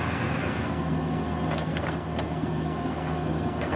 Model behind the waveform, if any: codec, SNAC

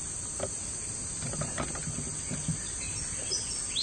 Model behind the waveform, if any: none